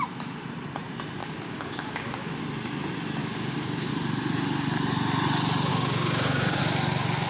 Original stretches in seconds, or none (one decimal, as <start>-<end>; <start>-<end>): 0.0-1.2; 2.4-3.2; 3.9-5.7; 6.6-7.3